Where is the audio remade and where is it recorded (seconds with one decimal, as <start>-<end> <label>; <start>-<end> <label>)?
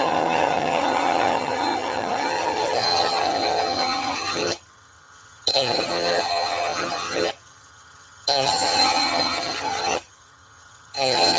0.0-11.4 remade